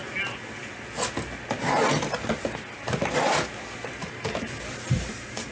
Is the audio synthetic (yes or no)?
no